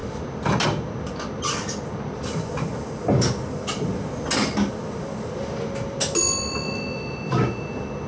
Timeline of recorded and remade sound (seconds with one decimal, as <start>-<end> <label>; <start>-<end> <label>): 0.0-8.1 recorded